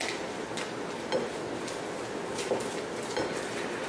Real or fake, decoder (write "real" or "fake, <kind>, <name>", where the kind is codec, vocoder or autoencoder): real